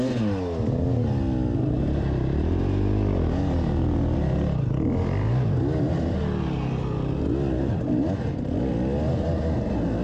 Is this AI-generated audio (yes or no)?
no